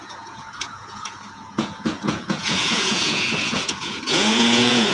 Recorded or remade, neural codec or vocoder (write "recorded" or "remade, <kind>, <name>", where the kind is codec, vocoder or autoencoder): remade, vocoder, Vocos